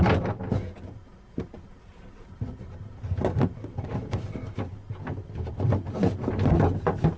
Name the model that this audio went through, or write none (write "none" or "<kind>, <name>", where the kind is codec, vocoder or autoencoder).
none